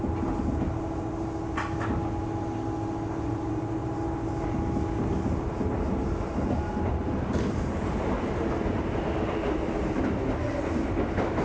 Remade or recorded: recorded